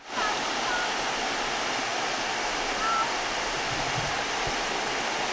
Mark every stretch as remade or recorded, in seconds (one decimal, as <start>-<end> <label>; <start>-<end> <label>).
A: 0.0-5.3 recorded